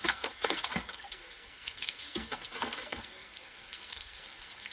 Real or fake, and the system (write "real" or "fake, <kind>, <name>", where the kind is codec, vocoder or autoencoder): fake, codec, SNAC